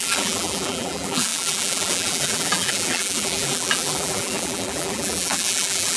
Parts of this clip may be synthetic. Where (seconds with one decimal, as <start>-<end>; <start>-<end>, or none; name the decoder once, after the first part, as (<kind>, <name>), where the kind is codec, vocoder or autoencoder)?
0.0-6.0 (vocoder, BigVGAN v2)